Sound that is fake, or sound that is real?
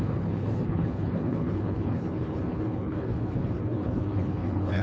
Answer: fake